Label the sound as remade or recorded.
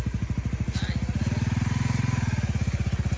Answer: recorded